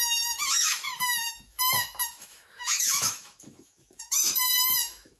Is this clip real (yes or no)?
no